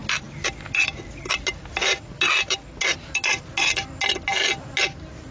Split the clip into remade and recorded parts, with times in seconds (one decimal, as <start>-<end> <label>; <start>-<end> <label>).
0.0-5.3 recorded